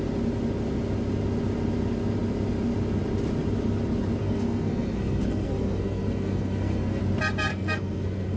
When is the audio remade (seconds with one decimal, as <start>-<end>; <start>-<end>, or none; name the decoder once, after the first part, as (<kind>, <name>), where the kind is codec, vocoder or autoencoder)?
4.2-7.0 (codec, SNAC); 7.5-8.4